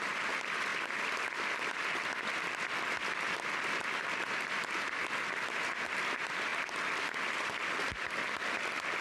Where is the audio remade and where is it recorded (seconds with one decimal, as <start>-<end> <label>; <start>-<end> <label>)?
0.0-9.0 recorded

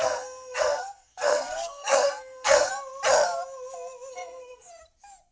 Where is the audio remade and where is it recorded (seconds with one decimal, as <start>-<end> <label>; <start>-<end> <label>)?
0.0-2.7 remade; 2.7-4.1 recorded; 4.1-4.7 remade; 4.7-5.3 recorded

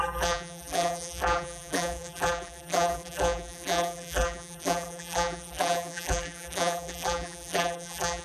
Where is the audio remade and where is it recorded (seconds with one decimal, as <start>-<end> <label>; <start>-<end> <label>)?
0.0-8.2 remade

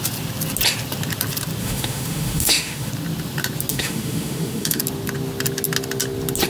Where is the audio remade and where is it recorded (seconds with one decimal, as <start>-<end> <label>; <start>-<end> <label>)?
0.0-1.6 recorded; 1.6-2.9 remade; 2.9-3.7 recorded; 3.7-4.8 remade; 4.8-6.5 recorded

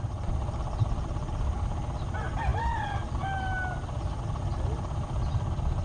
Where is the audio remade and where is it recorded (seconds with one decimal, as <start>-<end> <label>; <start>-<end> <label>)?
0.0-5.8 recorded

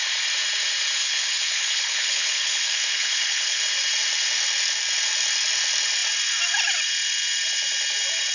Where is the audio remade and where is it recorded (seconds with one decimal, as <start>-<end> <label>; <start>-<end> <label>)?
0.0-1.0 recorded; 1.0-3.6 remade; 3.6-8.3 recorded